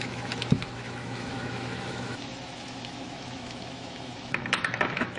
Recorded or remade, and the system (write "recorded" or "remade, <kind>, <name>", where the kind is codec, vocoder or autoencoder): remade, autoencoder, DAC-VAE